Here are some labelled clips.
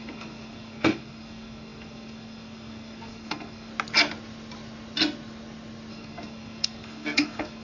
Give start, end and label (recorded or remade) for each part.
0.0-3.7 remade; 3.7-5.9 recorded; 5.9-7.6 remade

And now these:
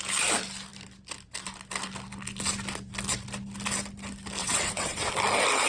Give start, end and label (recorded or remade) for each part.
0.0-4.4 recorded; 4.4-5.1 remade; 5.1-5.7 recorded

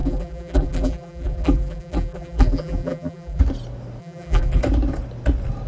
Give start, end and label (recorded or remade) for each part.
0.0-3.4 remade; 3.4-4.0 recorded; 4.0-4.6 remade; 4.6-5.7 recorded